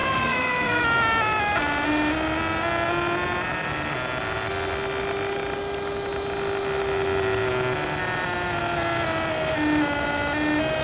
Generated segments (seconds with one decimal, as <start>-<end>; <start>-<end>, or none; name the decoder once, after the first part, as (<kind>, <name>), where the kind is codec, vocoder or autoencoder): 0.0-0.8 (codec, SNAC)